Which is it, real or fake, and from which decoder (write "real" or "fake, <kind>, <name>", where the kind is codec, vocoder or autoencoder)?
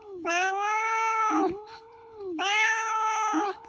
fake, codec, HILCodec